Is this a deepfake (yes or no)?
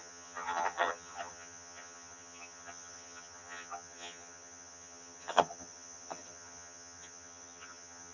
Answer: yes